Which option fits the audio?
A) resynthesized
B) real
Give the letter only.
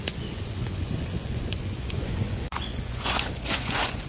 A